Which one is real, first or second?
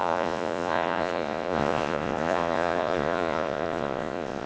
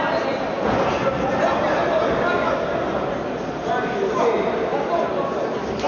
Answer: second